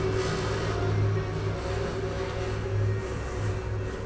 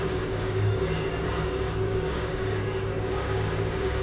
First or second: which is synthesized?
second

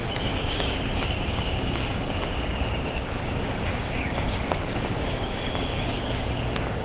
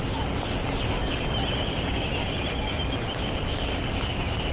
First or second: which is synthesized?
first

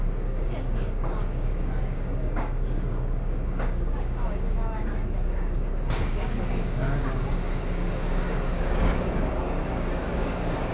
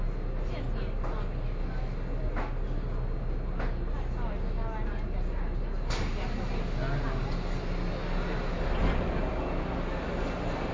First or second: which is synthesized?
first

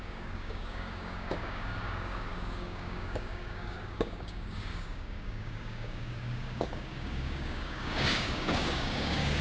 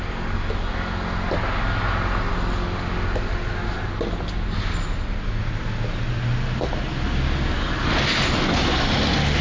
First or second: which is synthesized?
first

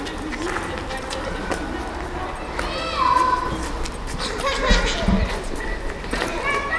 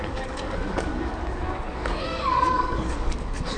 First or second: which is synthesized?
second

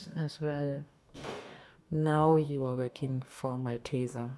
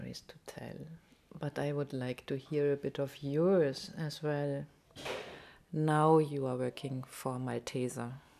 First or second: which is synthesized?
first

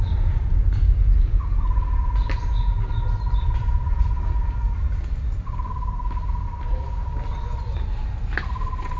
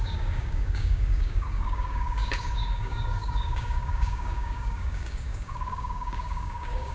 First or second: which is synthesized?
second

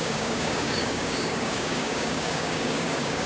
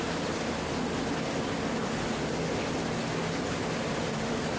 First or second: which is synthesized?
first